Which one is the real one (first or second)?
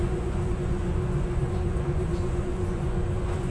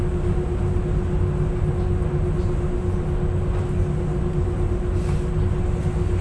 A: second